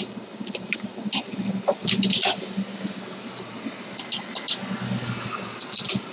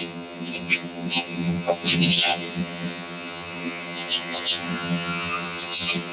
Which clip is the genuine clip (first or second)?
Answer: first